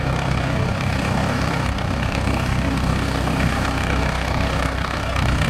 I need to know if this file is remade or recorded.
remade